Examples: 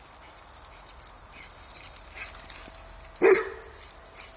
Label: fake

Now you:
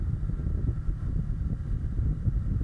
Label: fake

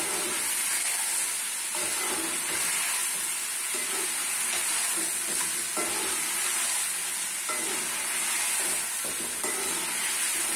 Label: real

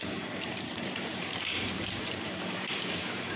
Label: fake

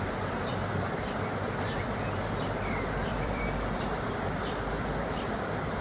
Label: fake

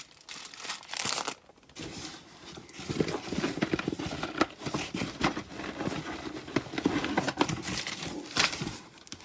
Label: real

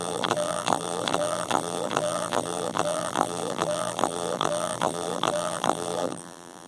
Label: fake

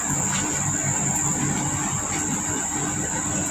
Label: real